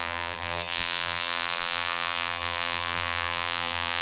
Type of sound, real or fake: fake